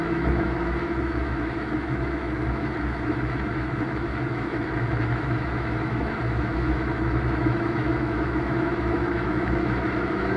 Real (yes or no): no